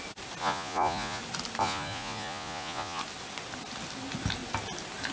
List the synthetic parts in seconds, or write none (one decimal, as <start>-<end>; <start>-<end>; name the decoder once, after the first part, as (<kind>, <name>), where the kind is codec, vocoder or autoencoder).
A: 0.4-1.2 (vocoder, Vocos); 1.6-3.0